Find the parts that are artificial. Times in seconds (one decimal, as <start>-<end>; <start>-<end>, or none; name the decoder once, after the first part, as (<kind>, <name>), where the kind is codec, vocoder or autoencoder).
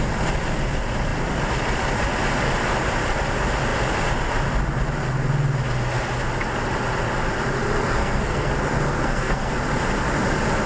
8.0-8.5 (codec, SNAC); 8.9-9.5